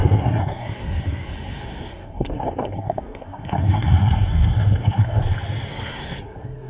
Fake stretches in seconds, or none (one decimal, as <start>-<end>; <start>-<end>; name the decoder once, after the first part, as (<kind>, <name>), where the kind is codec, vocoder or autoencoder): 0.0-5.2 (codec, SNAC); 5.7-6.7